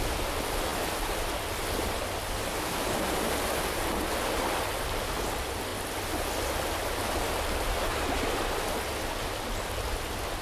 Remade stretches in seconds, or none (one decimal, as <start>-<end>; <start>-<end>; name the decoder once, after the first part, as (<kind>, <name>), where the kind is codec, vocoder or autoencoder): none